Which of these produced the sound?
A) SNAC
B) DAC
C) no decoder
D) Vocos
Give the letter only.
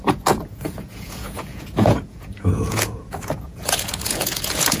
D